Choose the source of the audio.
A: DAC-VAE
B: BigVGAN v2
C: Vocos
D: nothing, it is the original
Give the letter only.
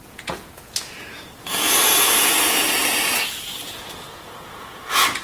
C